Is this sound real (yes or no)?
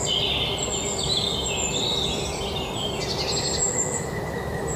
yes